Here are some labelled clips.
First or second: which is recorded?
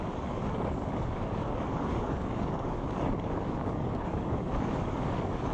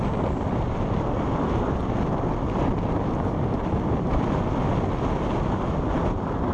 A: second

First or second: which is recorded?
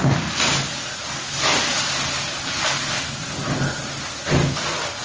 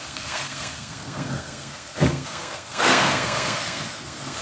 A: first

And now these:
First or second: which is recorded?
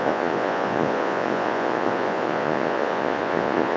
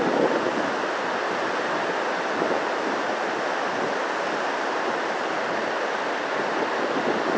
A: second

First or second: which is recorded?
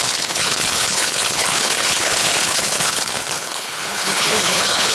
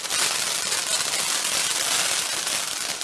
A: second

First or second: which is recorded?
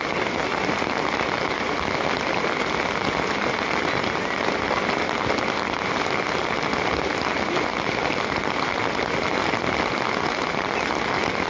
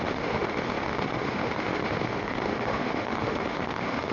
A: first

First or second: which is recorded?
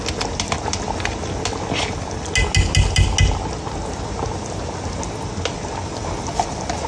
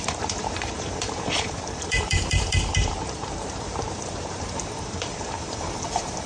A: first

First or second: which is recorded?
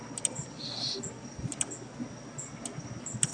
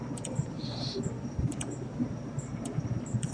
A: first